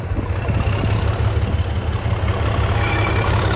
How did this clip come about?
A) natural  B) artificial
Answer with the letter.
A